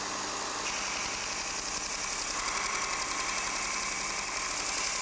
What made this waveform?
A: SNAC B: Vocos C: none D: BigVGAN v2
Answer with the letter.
C